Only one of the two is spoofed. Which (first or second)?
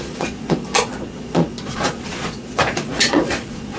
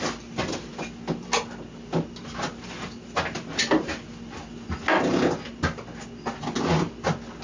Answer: first